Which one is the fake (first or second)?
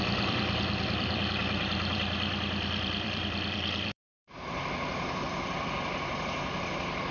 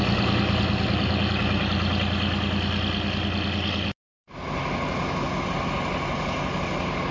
first